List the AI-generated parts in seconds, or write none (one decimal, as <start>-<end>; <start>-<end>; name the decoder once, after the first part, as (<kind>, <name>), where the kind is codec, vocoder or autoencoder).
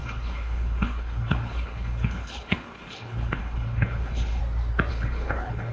0.0-4.4 (codec, HILCodec); 4.9-5.7